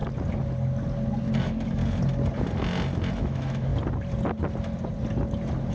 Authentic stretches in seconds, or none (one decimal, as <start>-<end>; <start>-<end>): 0.0-1.4; 1.8-3.2; 3.7-5.7